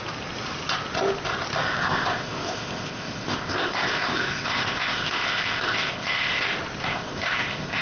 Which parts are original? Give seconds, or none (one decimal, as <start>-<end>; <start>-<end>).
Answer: 0.0-1.7; 6.4-6.9